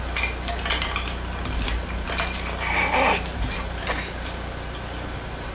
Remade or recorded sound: recorded